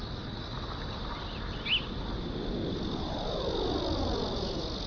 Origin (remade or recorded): recorded